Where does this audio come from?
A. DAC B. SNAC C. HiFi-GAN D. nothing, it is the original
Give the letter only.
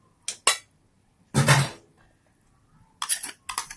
D